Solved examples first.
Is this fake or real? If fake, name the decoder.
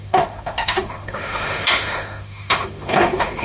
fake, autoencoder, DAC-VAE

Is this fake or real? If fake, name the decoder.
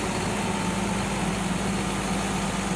real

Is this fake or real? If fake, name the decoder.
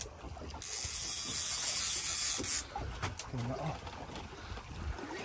real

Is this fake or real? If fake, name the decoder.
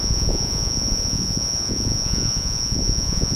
fake, vocoder, Vocos